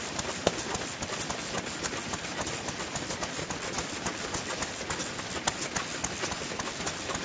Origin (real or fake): real